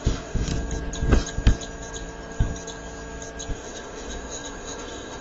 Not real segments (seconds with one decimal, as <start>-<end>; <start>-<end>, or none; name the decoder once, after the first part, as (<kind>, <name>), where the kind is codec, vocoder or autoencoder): 0.0-0.5 (autoencoder, DAC-VAE); 3.5-5.2